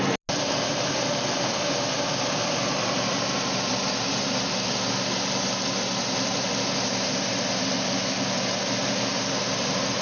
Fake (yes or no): no